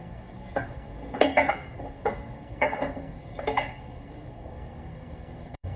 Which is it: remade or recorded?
remade